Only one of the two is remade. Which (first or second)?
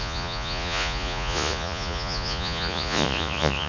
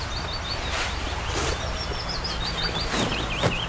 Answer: first